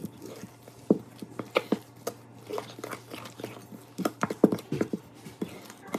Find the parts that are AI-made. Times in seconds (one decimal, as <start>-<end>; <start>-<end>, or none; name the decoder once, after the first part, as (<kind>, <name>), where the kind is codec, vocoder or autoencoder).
none